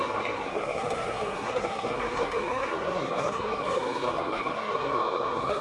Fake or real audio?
fake